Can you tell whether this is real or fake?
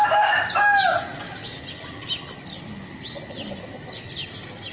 real